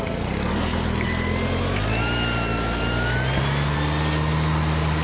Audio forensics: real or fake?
real